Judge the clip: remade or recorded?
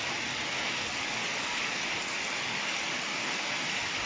recorded